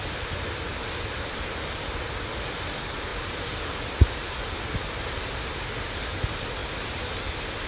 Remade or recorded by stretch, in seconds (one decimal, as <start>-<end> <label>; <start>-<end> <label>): 0.0-7.7 recorded